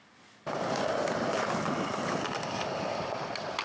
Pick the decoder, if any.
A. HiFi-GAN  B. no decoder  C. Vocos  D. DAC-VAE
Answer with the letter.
B